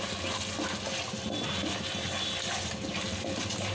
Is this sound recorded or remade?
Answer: recorded